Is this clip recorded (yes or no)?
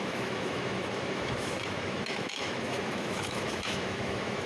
no